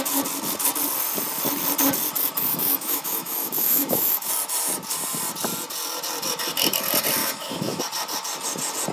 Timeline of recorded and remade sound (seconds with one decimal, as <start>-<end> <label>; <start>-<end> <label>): 0.0-2.5 recorded; 2.5-4.3 remade; 4.3-7.2 recorded; 7.2-7.8 remade; 7.8-8.9 recorded